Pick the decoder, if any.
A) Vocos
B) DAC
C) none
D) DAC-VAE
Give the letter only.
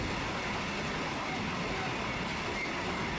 C